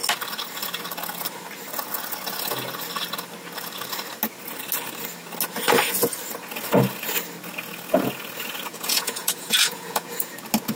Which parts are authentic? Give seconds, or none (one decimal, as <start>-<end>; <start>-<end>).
0.0-8.7; 10.3-10.8